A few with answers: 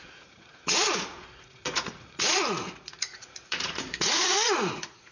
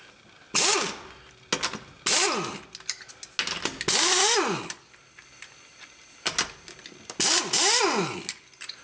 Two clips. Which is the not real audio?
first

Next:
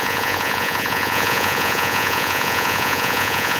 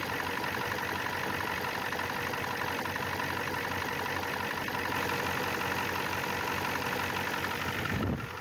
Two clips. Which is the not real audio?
first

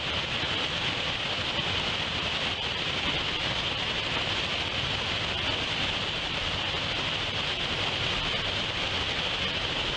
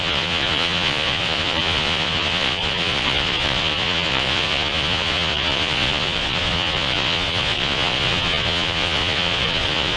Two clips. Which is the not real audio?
second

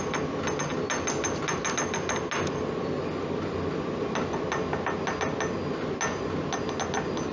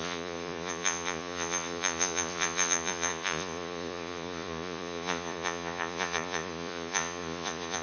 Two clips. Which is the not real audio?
second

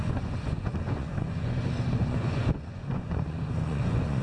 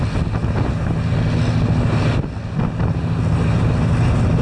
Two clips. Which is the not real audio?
first